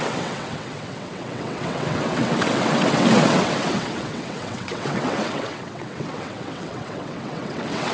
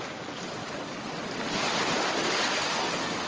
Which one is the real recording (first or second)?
second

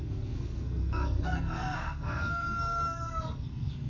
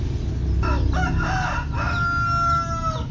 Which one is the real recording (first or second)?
second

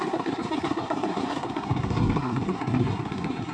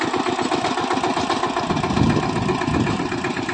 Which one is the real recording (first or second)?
second